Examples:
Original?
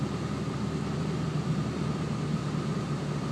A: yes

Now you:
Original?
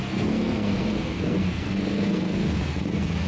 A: no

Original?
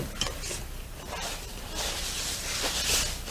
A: yes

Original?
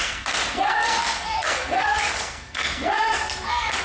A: no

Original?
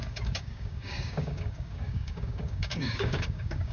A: no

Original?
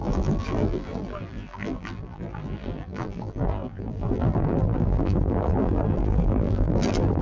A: no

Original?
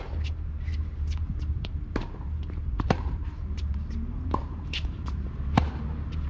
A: no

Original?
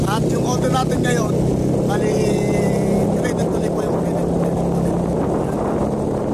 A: yes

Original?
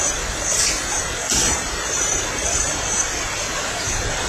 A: no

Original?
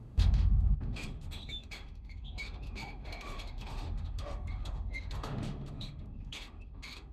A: no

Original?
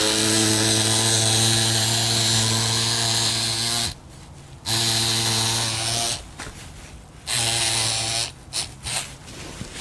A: yes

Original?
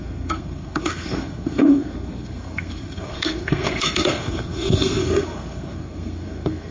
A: no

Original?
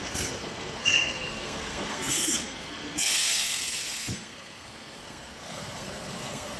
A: no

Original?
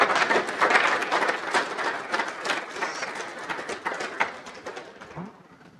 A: yes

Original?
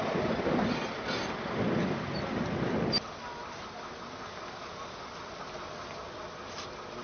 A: yes